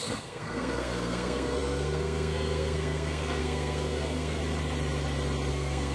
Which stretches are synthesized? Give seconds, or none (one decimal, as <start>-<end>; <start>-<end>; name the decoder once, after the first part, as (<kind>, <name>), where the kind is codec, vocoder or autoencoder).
0.0-4.4 (codec, SNAC); 5.5-5.9